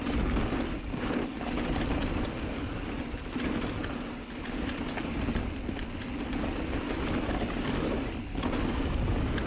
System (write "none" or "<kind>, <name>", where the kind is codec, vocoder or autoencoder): none